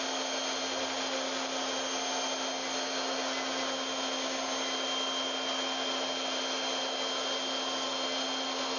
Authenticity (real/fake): real